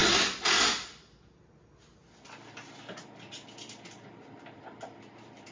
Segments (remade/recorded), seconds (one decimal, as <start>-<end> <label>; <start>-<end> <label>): 0.0-5.5 recorded